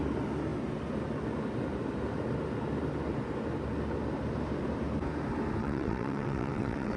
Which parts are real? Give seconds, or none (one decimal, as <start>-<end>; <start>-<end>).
0.0-5.6